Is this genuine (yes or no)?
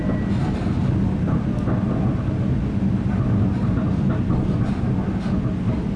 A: yes